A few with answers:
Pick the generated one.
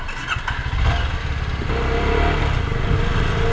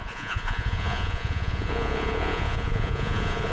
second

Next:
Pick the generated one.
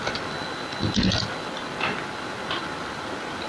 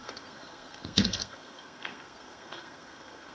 second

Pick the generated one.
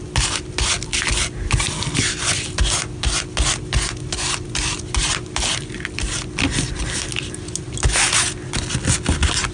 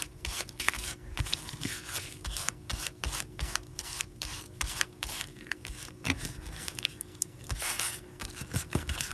second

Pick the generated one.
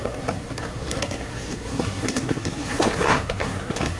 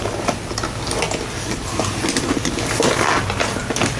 first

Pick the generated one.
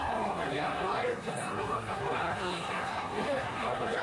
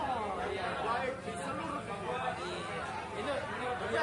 first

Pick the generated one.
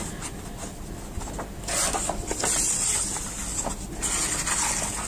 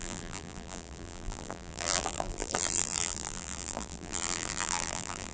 second